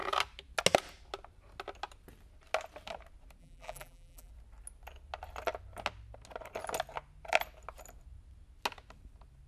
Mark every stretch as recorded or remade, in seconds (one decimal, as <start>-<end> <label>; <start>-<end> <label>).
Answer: 0.0-3.4 recorded; 3.4-4.3 remade; 4.3-9.5 recorded